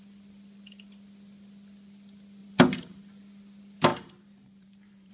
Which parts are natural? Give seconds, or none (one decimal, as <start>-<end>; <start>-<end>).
0.0-2.4; 3.0-3.9